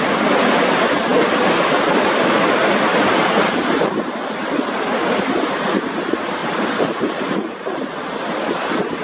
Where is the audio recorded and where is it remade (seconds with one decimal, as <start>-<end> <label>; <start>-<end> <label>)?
0.0-6.4 recorded; 6.4-7.0 remade; 7.0-9.0 recorded